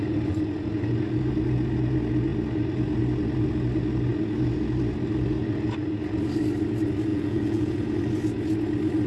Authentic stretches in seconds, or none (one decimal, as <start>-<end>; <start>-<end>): 0.0-7.1; 7.7-9.1